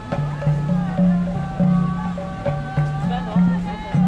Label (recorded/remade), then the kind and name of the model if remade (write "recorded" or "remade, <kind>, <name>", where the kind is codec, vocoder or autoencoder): recorded